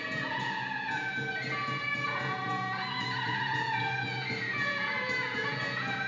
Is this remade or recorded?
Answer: remade